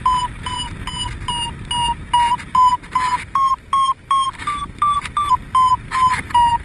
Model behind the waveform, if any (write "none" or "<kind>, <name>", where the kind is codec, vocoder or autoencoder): none